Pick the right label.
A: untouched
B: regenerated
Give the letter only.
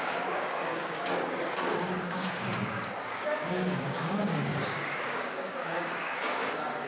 B